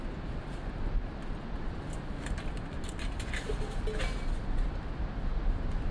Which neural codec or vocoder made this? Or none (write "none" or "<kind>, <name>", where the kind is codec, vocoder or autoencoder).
none